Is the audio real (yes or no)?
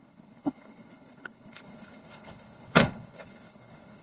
no